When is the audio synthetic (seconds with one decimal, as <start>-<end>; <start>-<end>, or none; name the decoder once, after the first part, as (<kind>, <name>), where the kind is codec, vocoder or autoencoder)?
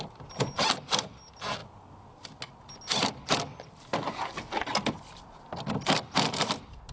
none